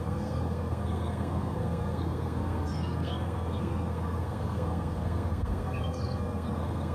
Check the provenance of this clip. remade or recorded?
remade